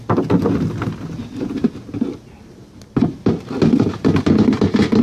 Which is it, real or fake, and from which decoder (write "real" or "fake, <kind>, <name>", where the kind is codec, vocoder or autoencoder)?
real